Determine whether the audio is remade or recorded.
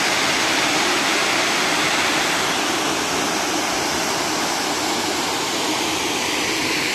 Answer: recorded